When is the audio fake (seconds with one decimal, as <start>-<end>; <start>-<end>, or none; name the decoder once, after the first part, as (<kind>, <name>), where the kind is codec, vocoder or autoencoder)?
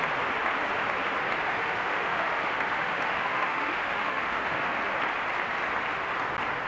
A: 1.6-4.8 (autoencoder, DAC-VAE)